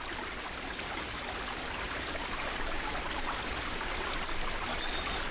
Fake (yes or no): no